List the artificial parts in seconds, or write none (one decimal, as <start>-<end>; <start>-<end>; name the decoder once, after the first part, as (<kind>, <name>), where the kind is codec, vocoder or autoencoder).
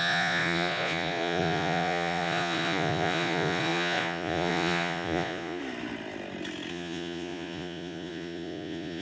0.0-5.6 (vocoder, Vocos); 6.7-9.0